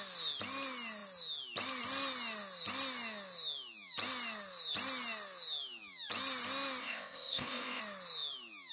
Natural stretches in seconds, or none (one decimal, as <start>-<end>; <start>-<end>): 0.0-6.8; 7.8-8.7